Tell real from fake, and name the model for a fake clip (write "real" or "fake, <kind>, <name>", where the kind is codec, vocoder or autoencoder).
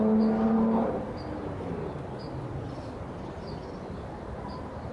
real